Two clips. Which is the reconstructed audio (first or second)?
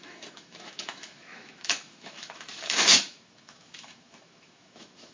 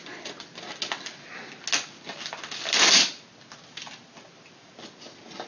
first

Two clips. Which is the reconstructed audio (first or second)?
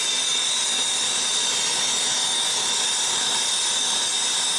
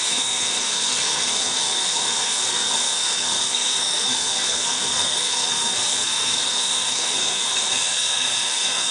second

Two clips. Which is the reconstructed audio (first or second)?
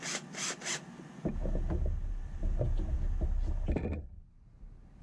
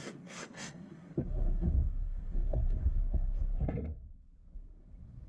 second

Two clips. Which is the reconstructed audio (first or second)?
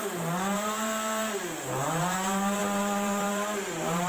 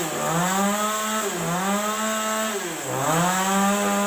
first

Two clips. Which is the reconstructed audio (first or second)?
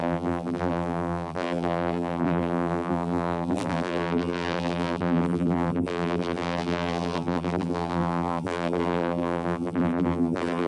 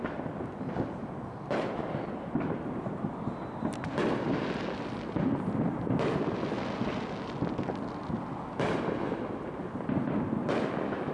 first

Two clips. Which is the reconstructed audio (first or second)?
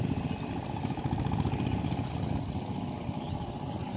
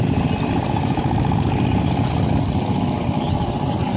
first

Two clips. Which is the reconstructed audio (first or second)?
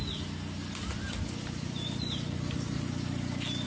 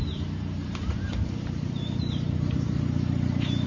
second